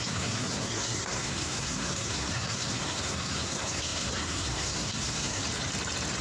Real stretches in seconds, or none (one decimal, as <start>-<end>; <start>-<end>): 5.4-6.2

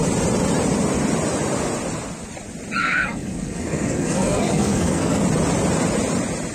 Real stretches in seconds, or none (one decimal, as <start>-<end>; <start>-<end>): 0.0-2.8; 5.2-6.5

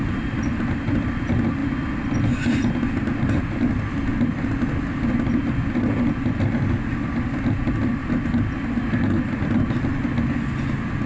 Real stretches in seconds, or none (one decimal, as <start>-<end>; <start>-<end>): 0.0-11.1

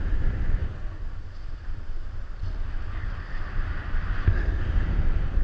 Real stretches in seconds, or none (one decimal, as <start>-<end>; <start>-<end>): 0.0-5.4

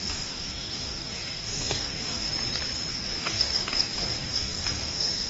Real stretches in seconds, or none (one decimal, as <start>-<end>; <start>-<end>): 2.3-2.9

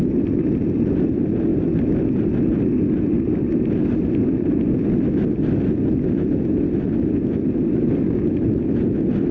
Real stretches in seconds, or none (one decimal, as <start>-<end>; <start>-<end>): 0.0-9.3